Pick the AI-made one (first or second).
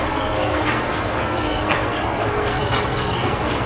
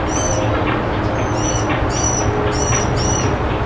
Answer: first